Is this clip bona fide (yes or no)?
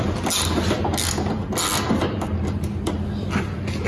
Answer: yes